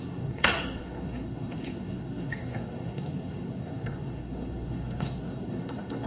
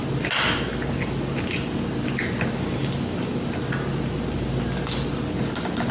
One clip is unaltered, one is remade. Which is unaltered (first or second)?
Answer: second